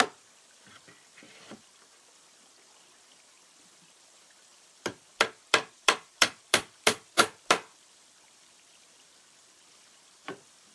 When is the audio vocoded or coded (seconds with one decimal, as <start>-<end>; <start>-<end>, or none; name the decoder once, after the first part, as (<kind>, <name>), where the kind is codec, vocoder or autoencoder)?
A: 0.0-10.7 (vocoder, BigVGAN v2)